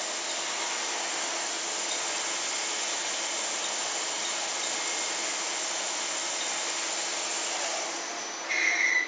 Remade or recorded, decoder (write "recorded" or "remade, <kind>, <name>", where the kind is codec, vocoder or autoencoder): recorded